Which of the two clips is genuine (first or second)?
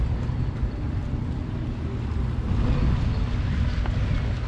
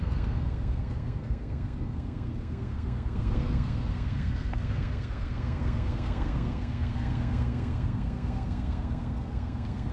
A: first